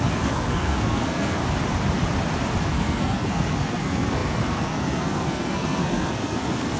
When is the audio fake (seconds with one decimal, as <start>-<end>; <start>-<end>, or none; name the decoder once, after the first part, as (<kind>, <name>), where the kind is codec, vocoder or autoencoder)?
0.0-1.4 (codec, SNAC); 2.6-6.8